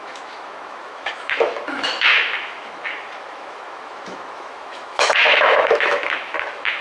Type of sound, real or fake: fake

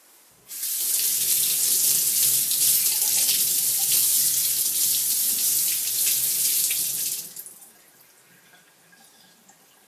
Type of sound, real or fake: real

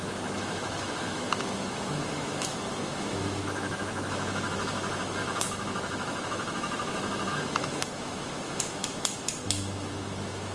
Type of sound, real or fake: fake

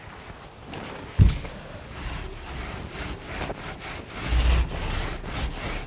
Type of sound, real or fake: real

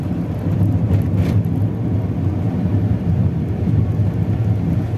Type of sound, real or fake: real